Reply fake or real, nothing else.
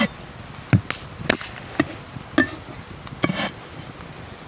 real